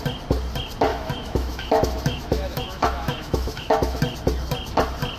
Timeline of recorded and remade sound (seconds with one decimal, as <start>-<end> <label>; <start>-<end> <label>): 0.0-0.9 recorded; 0.9-4.0 remade; 4.0-5.2 recorded